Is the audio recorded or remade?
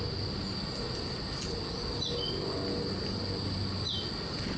recorded